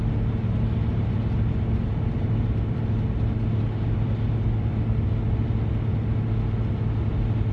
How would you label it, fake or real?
real